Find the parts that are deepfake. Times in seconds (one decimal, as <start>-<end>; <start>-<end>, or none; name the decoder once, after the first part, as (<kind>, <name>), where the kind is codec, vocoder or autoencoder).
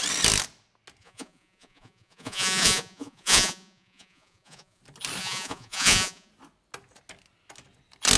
1.0-4.8 (vocoder, Vocos); 5.2-6.3